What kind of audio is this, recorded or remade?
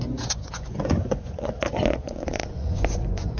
remade